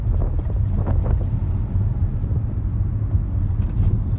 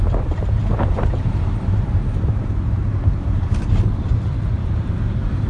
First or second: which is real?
first